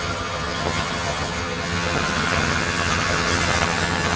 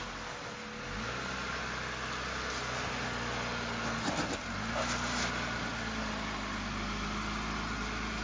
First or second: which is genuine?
second